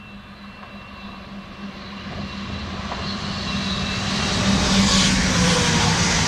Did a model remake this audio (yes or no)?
no